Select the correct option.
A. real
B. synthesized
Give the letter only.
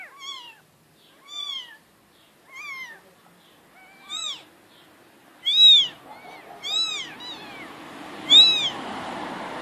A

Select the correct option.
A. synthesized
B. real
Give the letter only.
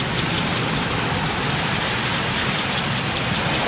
A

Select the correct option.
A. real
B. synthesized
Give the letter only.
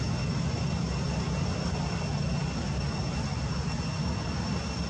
A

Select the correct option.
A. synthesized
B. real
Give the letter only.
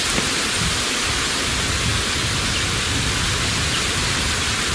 B